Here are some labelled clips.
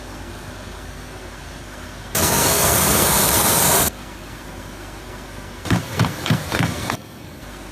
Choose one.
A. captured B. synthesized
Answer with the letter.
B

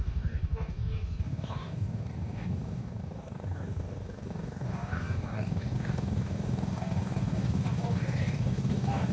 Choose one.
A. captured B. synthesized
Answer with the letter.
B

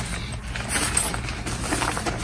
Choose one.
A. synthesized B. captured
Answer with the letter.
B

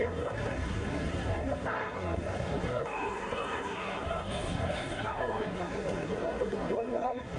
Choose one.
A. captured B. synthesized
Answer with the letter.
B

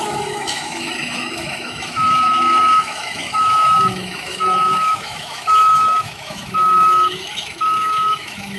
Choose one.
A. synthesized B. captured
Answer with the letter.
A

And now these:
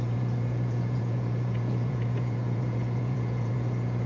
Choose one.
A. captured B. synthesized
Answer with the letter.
B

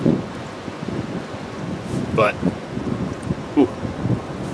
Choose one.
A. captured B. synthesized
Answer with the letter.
B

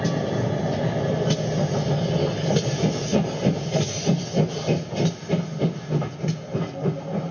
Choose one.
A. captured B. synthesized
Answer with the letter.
A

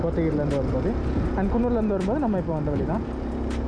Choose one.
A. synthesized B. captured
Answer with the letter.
B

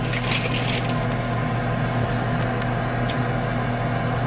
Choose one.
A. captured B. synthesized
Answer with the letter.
A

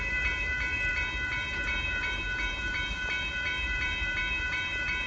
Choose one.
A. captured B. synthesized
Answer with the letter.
B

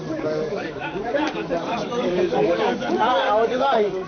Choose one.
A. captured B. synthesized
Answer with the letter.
B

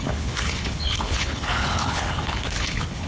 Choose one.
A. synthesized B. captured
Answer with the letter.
A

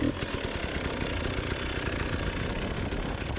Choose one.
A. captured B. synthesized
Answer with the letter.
A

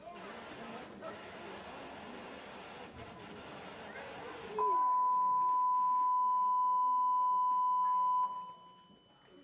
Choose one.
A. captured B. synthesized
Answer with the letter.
A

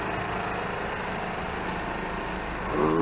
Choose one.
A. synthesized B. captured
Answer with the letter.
B